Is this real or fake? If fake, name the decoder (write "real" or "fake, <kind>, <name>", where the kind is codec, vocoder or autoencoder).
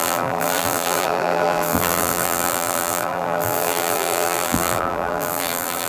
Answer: fake, vocoder, BigVGAN v2